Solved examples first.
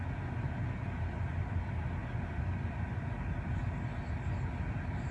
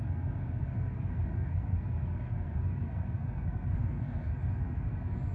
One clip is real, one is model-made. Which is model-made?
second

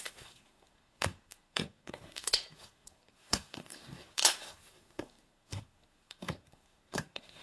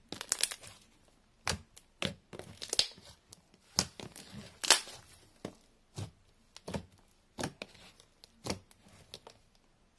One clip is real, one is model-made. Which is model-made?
first